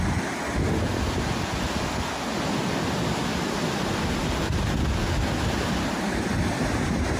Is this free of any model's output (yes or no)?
yes